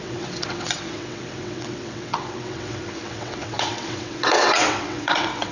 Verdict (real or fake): fake